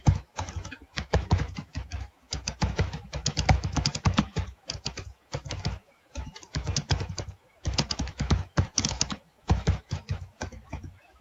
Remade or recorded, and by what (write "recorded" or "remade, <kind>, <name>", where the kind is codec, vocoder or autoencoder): remade, autoencoder, DAC-VAE